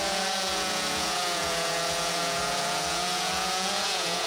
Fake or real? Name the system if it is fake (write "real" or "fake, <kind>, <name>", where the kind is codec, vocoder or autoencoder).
fake, vocoder, Vocos